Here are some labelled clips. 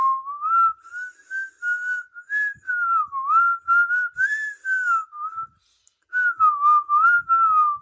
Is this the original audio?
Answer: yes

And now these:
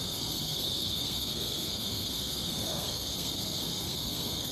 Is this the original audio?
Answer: no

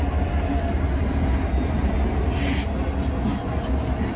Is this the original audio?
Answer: yes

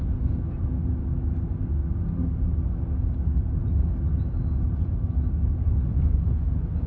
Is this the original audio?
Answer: yes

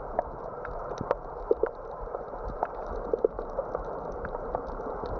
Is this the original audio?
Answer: no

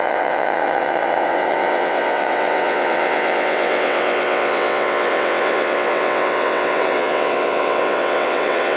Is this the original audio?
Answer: no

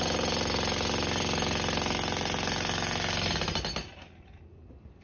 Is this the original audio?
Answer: yes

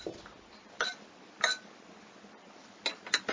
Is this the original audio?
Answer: yes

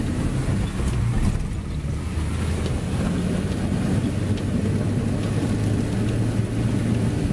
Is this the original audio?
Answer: yes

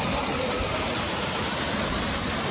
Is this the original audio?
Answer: no